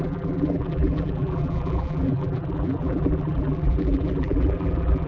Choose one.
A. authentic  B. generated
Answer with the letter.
B